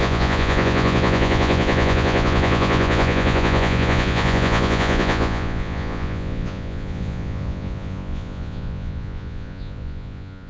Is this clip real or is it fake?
fake